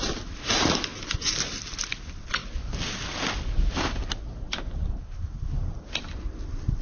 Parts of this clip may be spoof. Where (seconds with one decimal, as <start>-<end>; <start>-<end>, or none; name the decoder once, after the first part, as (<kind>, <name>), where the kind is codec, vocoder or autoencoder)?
none